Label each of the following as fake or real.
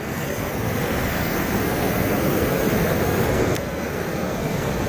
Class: fake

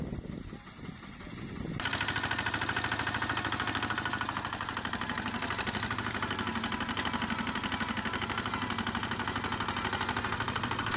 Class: real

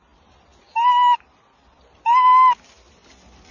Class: real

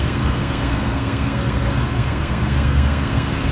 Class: fake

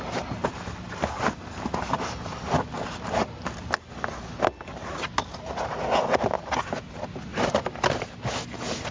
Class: real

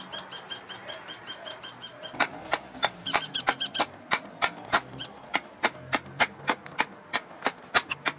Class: real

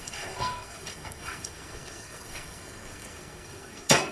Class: fake